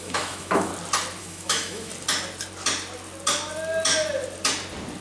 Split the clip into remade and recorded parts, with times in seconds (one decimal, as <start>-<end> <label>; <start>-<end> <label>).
0.0-0.7 remade; 0.7-1.2 recorded; 1.2-1.9 remade; 1.9-5.0 recorded